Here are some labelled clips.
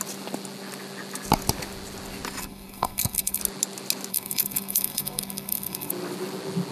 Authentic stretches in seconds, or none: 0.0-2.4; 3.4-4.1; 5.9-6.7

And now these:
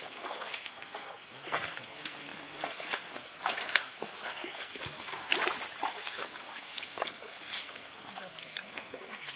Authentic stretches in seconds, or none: 5.3-5.9

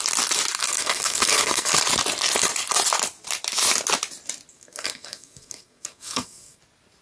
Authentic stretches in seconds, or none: 0.0-0.6; 1.7-4.5; 6.6-7.0

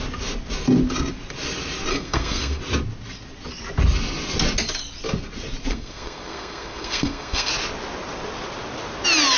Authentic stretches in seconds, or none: 0.0-1.9; 2.6-5.7; 7.5-9.4

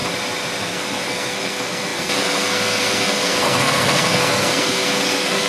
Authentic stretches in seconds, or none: 0.0-0.6

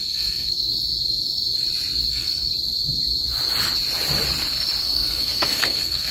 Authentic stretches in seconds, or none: 0.7-2.1; 2.5-4.8